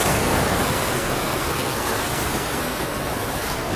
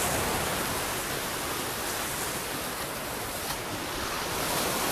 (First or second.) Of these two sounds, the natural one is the second